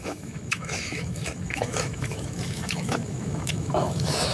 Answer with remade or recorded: remade